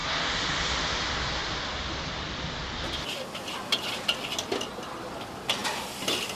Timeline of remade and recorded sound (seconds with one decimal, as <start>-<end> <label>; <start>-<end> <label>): 0.0-6.4 recorded